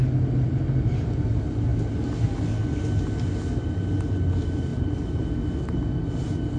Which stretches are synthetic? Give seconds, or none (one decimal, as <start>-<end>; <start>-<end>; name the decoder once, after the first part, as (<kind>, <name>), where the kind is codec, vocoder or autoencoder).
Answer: none